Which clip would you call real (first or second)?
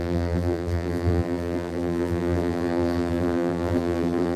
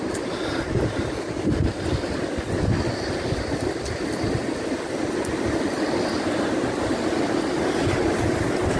second